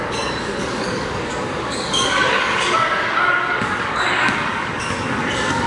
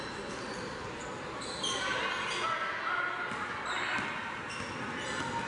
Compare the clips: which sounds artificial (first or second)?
first